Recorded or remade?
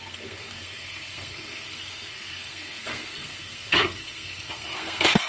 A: remade